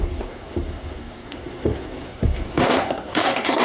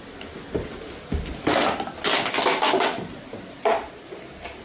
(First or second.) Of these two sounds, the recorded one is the second